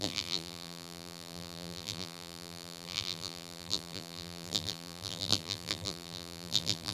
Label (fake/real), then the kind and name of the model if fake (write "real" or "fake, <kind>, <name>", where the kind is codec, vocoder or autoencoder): fake, vocoder, BigVGAN v2